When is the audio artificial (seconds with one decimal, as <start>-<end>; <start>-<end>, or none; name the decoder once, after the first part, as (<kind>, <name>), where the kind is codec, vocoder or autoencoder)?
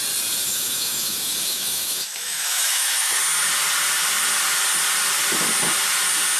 0.5-3.2 (autoencoder, DAC-VAE)